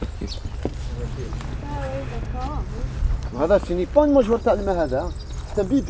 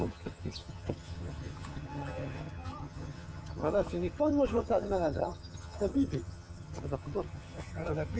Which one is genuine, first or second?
first